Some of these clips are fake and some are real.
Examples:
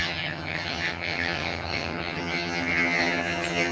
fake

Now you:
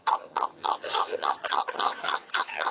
fake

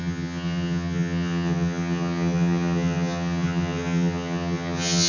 fake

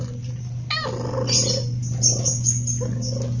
real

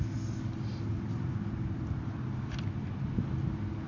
real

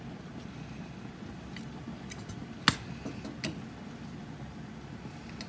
real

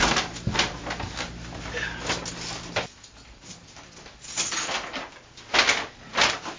real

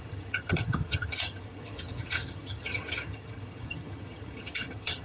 fake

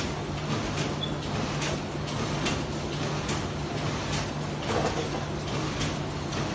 real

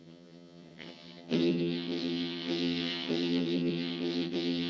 fake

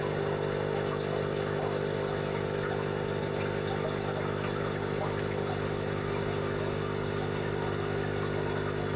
real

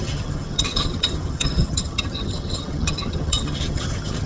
fake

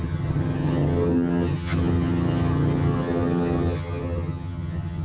fake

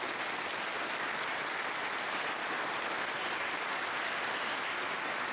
real